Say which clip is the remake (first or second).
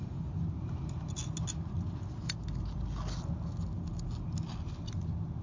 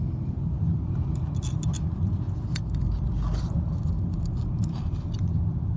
second